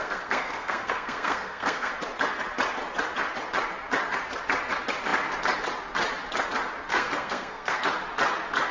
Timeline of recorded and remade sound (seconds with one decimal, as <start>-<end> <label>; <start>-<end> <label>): 0.0-1.9 remade; 1.9-6.9 recorded; 6.9-7.8 remade; 7.8-8.7 recorded